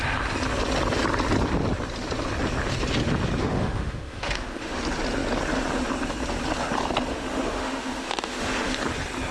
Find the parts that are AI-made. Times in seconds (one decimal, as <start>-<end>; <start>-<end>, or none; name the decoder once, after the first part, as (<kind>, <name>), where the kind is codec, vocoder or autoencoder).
3.4-4.8 (autoencoder, DAC-VAE); 7.1-8.8